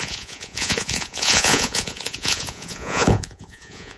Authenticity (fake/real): fake